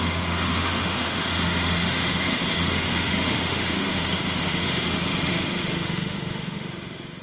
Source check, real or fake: fake